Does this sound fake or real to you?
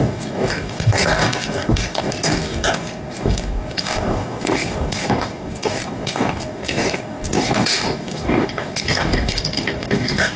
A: fake